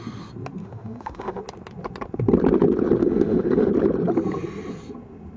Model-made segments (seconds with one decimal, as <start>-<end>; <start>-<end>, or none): 0.6-1.4; 3.0-3.7